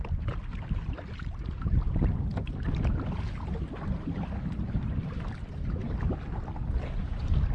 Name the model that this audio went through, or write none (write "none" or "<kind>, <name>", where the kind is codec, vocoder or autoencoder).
none